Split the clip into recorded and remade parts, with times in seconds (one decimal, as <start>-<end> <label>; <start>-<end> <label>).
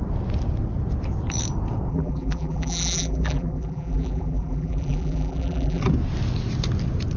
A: 0.0-1.9 recorded; 1.9-5.8 remade; 5.8-7.2 recorded